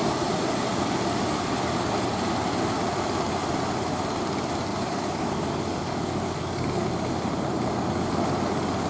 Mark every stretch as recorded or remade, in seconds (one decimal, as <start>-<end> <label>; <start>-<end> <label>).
0.0-4.7 recorded; 4.7-6.9 remade; 6.9-8.9 recorded